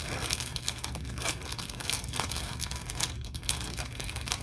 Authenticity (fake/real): fake